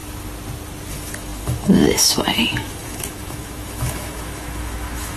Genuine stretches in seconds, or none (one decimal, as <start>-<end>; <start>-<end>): 0.0-0.9